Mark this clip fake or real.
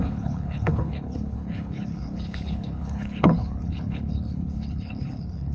fake